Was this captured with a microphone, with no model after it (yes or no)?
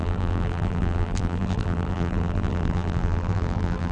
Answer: no